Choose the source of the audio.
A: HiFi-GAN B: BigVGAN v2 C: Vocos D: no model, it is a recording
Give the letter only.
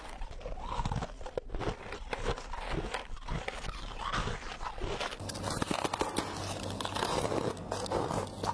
D